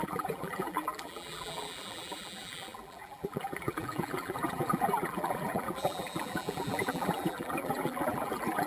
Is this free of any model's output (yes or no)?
no